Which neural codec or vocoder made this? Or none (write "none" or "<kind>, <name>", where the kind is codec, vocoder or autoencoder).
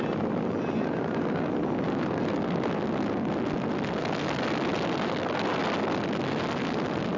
none